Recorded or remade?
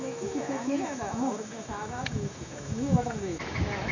remade